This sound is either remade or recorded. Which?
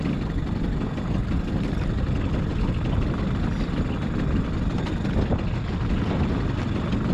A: recorded